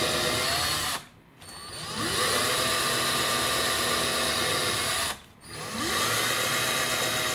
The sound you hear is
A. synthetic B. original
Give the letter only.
B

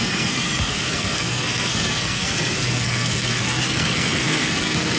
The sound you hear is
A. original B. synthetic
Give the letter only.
B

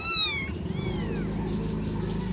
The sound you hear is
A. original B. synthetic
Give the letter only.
A